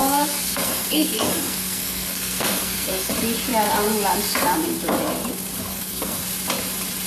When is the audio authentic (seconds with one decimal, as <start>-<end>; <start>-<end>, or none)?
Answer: 3.1-5.7; 6.2-7.1

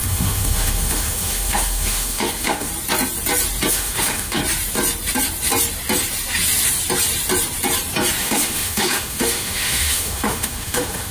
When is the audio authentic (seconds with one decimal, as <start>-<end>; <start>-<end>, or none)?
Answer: 2.7-3.7; 4.4-8.2